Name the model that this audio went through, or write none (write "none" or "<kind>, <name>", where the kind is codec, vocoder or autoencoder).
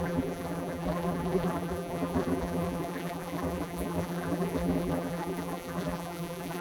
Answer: vocoder, BigVGAN v2